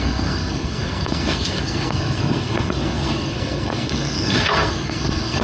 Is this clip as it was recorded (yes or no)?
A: no